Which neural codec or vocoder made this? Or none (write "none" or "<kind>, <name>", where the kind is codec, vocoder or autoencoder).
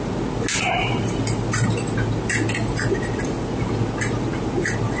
none